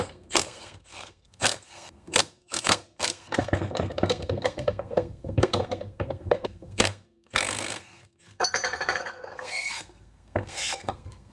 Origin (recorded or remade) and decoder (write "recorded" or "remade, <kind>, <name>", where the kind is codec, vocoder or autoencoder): remade, codec, SNAC